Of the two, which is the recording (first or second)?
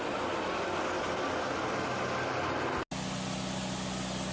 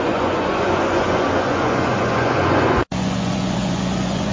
first